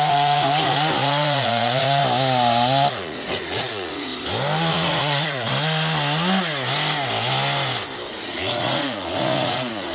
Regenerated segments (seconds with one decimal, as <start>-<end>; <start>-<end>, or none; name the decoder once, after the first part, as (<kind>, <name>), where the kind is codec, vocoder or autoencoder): 0.0-2.0 (vocoder, Vocos); 2.9-4.1; 4.7-5.5; 8.1-9.9